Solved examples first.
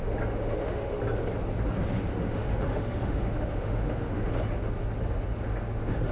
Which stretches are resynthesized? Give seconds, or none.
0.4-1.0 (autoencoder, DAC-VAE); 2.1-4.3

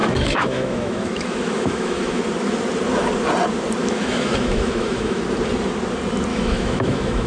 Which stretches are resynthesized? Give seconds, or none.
0.0-2.2 (autoencoder, DAC-VAE); 3.8-5.2; 6.3-7.3

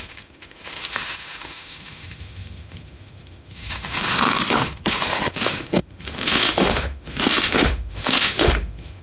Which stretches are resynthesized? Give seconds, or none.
0.0-9.0 (autoencoder, DAC-VAE)

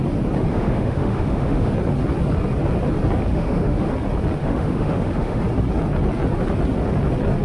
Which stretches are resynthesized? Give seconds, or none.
0.5-1.7 (autoencoder, DAC-VAE); 3.3-3.9; 4.4-5.4

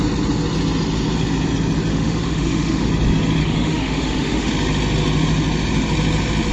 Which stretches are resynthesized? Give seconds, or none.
1.9-2.9 (autoencoder, DAC-VAE); 3.4-4.5

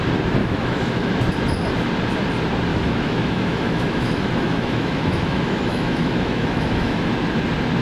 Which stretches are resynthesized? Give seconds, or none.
0.4-1.1 (autoencoder, DAC-VAE); 2.7-7.1